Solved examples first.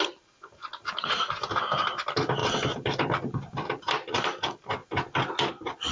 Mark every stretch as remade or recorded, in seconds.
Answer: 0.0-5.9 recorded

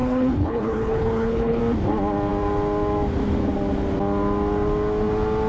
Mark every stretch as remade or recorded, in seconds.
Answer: 0.0-1.6 remade; 1.6-5.5 recorded

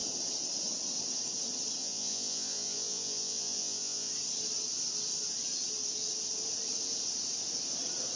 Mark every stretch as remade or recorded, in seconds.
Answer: 0.0-1.8 recorded; 1.8-4.1 remade; 4.1-8.2 recorded

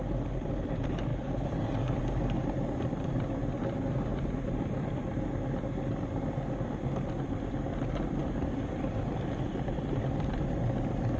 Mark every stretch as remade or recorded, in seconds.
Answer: 0.0-1.1 recorded; 1.1-2.0 remade; 2.0-4.1 recorded; 4.1-4.9 remade; 4.9-8.2 recorded; 8.2-10.6 remade; 10.6-11.2 recorded

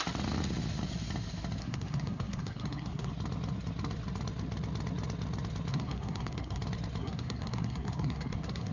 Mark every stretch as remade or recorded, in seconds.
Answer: 0.0-1.6 recorded; 1.6-3.1 remade; 3.1-5.7 recorded; 5.7-6.6 remade; 6.6-7.0 recorded; 7.0-8.7 remade

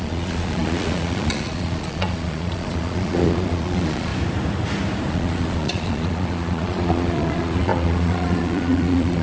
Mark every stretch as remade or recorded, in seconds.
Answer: 0.0-4.1 remade; 4.1-5.1 recorded; 5.1-9.2 remade

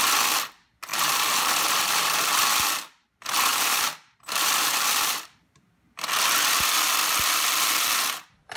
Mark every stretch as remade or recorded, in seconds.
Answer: 0.0-0.9 recorded; 0.9-2.3 remade; 2.3-3.5 recorded; 3.5-5.7 remade; 5.7-8.6 recorded